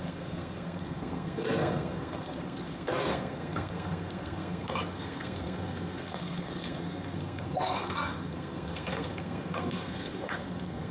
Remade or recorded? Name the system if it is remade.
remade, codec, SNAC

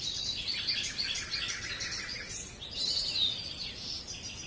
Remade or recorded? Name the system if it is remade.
recorded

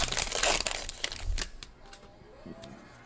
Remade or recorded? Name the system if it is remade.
recorded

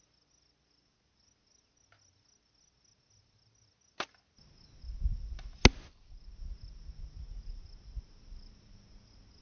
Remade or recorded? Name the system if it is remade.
recorded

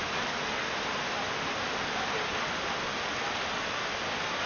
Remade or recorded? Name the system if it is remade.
recorded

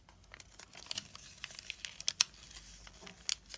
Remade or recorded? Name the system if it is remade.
recorded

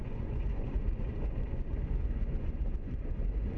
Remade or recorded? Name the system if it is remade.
remade, vocoder, Vocos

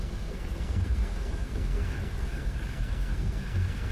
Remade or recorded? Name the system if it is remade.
remade, codec, SNAC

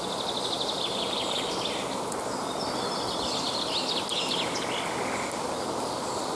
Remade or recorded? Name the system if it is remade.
recorded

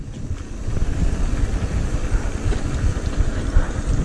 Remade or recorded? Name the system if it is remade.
recorded